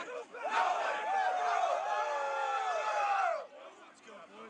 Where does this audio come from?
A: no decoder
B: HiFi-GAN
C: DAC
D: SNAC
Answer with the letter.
A